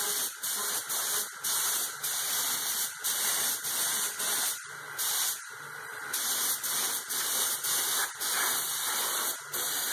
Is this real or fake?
real